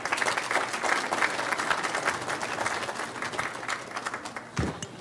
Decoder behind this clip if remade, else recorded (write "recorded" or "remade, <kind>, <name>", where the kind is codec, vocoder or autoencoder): recorded